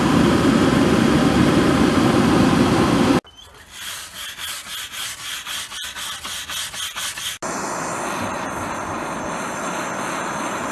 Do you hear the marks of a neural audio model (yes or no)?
no